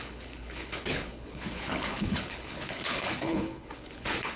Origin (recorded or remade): remade